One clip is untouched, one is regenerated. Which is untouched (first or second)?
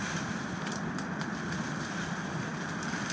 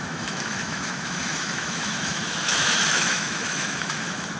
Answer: first